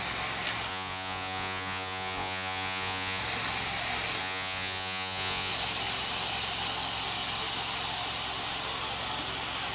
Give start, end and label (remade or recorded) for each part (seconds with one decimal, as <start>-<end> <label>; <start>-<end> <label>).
0.0-0.7 recorded; 0.7-3.2 remade; 3.2-4.2 recorded; 4.2-5.5 remade; 5.5-9.7 recorded